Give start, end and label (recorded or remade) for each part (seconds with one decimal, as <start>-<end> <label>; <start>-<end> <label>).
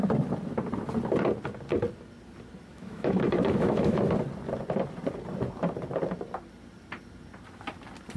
0.0-2.7 recorded; 2.7-4.0 remade; 4.0-8.2 recorded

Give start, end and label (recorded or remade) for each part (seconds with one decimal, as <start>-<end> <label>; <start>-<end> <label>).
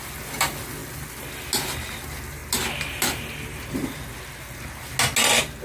0.0-5.6 recorded